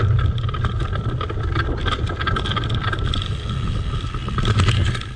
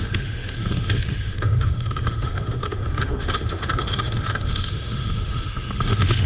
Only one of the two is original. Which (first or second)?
first